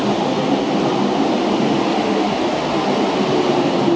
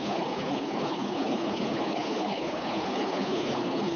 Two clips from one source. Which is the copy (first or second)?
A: second